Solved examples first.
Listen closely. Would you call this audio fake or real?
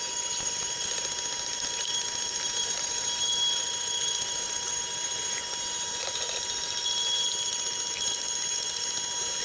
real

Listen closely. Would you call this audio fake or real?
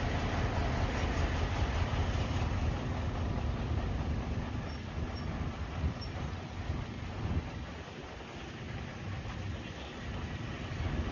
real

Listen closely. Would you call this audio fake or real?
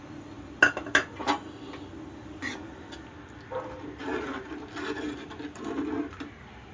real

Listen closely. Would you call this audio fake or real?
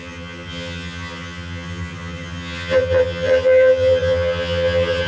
fake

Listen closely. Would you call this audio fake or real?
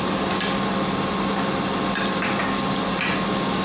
real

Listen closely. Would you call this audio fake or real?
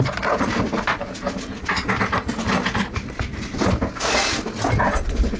real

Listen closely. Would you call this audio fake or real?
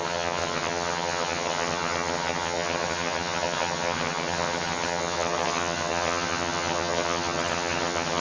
fake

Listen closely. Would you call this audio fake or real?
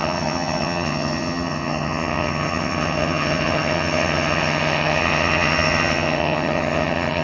fake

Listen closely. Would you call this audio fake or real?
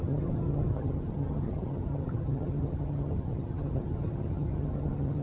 fake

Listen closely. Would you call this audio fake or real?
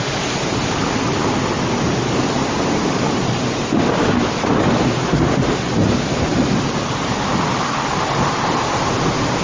real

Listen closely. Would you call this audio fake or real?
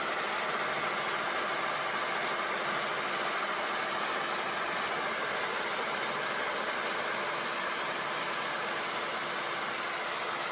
real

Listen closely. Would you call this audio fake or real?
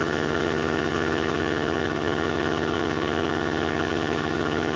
fake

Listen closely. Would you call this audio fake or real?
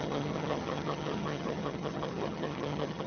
fake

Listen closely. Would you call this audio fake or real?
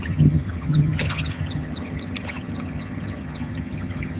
fake